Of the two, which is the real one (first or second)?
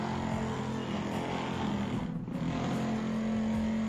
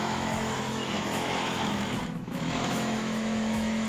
first